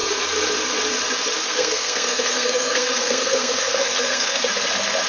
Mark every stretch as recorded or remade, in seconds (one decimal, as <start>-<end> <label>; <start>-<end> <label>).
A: 0.0-1.4 recorded; 1.4-4.5 remade; 4.5-5.1 recorded

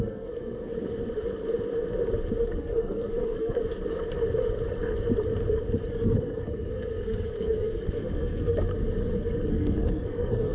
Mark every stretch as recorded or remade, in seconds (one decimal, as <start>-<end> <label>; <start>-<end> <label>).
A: 0.0-0.7 remade; 0.7-2.4 recorded; 2.4-3.6 remade; 3.6-5.9 recorded; 5.9-8.7 remade; 8.7-9.5 recorded; 9.5-10.5 remade

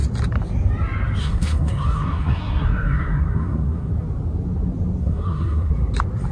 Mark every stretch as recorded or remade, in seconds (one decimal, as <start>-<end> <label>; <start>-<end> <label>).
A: 0.0-1.2 recorded; 1.2-3.9 remade; 3.9-5.0 recorded; 5.0-5.7 remade; 5.7-6.3 recorded

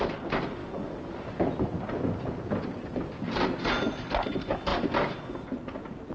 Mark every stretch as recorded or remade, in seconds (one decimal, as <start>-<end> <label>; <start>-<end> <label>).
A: 0.0-6.1 recorded

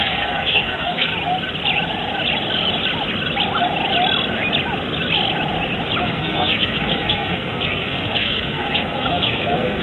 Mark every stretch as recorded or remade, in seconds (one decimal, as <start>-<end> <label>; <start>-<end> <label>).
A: 0.0-1.1 remade; 1.1-6.0 recorded; 6.0-9.8 remade

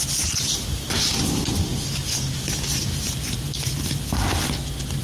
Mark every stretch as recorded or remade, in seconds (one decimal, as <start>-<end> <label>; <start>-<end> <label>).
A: 0.0-5.0 recorded